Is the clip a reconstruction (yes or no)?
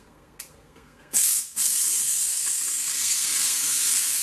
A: yes